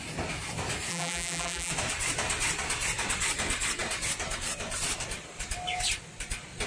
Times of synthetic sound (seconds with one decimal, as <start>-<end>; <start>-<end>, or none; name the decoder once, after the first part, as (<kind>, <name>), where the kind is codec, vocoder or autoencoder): 0.9-1.7 (vocoder, BigVGAN v2)